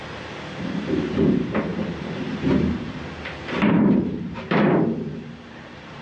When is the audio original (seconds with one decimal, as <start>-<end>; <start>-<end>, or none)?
0.0-0.6